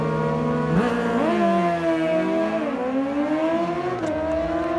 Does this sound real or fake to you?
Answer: real